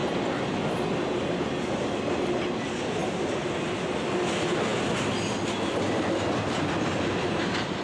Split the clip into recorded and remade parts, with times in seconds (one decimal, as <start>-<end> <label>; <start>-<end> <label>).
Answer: 0.0-7.8 recorded